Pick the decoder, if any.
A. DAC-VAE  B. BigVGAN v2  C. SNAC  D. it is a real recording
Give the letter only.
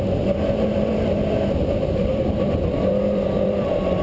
B